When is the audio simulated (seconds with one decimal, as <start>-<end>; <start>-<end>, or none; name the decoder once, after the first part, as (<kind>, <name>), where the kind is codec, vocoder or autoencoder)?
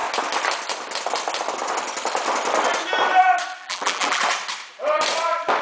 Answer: 3.6-4.2 (vocoder, BigVGAN v2)